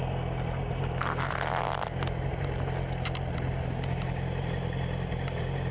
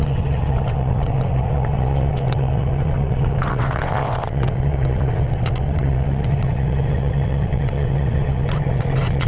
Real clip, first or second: first